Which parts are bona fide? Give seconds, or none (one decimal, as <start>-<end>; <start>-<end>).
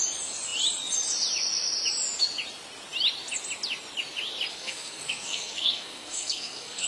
0.0-4.5